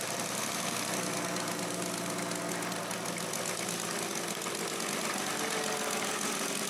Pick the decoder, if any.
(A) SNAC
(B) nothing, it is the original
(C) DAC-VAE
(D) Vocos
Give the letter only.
B